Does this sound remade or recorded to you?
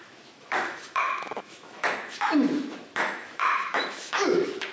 remade